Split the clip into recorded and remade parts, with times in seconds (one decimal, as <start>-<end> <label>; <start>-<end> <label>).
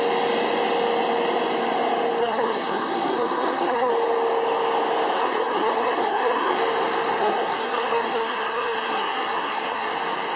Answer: 0.0-2.2 recorded; 2.2-3.9 remade; 3.9-5.2 recorded; 5.2-6.6 remade; 6.6-7.2 recorded; 7.2-9.9 remade; 9.9-10.4 recorded